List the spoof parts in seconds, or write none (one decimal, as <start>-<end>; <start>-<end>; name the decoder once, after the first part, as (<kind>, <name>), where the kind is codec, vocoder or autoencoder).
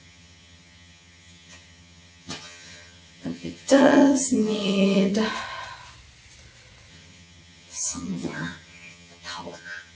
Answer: 0.0-5.1 (vocoder, HiFi-GAN); 6.9-9.9